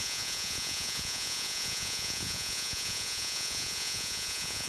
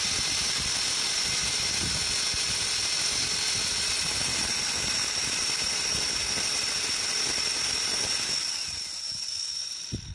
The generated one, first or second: first